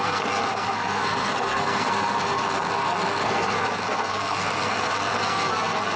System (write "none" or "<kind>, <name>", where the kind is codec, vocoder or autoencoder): codec, SNAC